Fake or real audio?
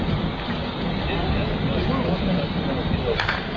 real